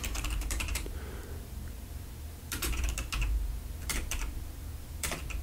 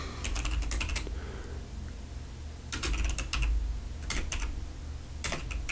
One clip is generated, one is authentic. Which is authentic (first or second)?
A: second